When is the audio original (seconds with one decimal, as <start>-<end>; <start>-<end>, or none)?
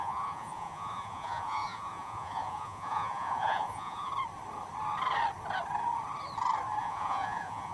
4.1-6.8